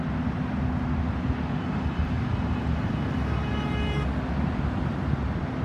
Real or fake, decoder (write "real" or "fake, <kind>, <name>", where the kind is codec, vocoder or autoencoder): real